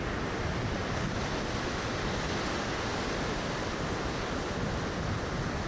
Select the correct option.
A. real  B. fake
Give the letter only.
A